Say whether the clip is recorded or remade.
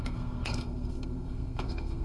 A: remade